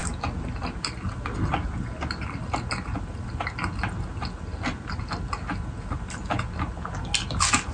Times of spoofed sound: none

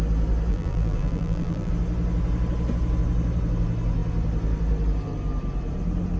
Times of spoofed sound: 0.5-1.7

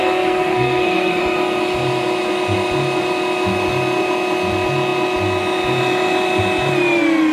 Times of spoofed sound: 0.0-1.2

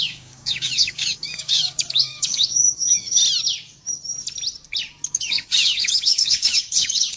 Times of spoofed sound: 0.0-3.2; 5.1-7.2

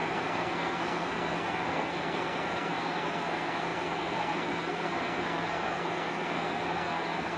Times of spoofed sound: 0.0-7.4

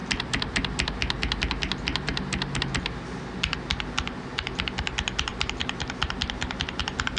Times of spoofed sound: none

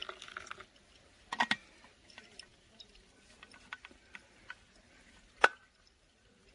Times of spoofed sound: none

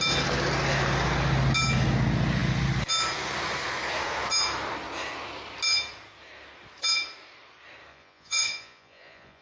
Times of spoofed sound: 7.9-9.4